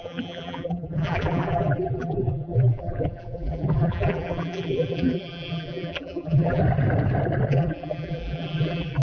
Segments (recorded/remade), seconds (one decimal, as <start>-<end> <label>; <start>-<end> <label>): 0.0-6.6 remade; 6.6-7.5 recorded; 7.5-9.0 remade